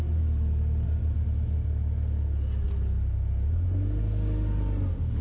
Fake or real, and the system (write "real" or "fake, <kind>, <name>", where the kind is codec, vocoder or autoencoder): real